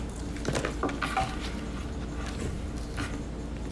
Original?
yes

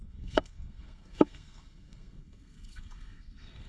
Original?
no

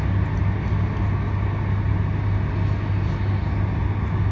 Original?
yes